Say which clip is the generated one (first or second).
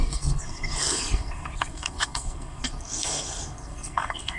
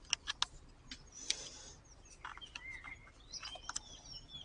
first